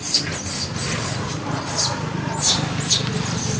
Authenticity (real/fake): real